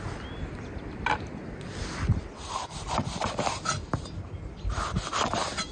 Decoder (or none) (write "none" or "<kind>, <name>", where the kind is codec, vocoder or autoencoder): none